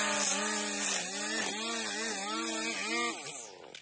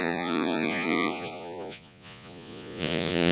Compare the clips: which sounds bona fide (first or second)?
first